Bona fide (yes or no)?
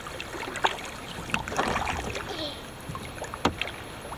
yes